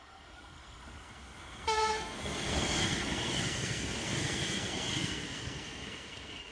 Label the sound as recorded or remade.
remade